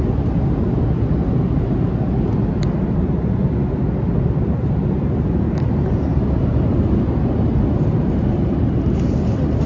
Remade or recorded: recorded